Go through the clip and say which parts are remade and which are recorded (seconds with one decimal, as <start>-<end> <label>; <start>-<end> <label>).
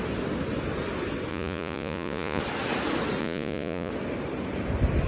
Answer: 0.0-1.3 recorded; 1.3-2.4 remade; 2.4-3.2 recorded; 3.2-3.9 remade; 3.9-5.1 recorded